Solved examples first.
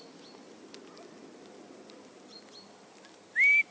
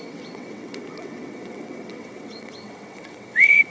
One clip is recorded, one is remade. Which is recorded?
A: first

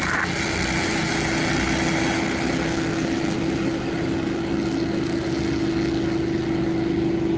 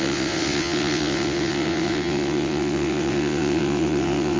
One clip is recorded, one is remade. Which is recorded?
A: first